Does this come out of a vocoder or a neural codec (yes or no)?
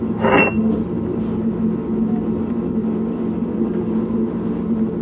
no